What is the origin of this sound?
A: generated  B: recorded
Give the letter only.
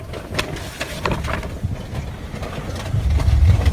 B